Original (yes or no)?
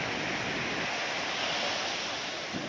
yes